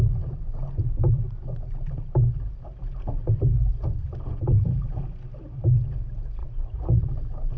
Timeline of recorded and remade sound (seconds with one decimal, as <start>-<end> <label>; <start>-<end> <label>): 0.0-6.4 recorded; 6.4-7.1 remade; 7.1-7.6 recorded